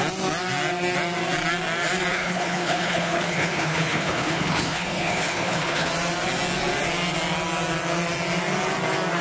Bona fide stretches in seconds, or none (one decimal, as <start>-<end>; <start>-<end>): 0.0-2.1; 5.9-9.2